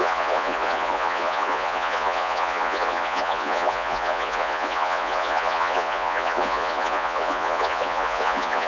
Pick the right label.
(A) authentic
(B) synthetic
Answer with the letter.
B